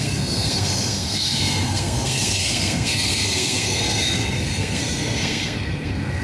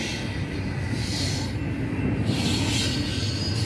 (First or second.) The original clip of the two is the second